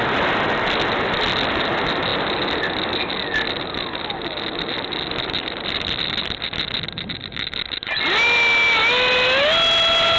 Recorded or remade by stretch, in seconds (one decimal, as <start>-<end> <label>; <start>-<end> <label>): 0.0-10.2 recorded